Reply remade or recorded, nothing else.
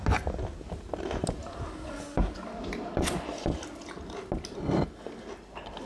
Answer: recorded